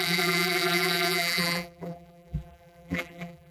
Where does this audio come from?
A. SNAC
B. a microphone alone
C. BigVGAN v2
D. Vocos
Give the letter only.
C